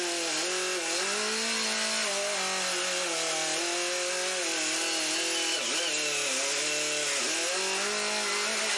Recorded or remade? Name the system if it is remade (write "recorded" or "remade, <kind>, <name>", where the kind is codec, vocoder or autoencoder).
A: recorded